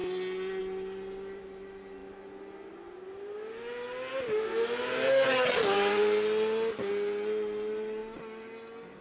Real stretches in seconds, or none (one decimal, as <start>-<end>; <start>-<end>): 0.0-9.0